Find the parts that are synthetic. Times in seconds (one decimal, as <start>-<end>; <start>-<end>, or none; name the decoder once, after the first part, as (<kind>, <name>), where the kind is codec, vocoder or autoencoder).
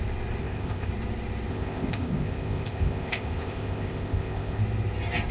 0.4-0.9 (codec, ZipCodec); 1.5-4.6